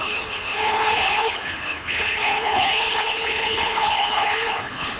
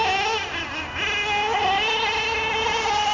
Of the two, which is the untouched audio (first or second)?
second